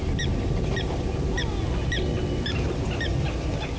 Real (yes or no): yes